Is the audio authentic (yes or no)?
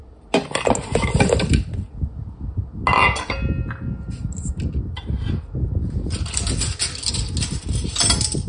yes